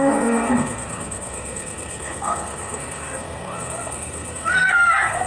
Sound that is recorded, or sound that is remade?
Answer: remade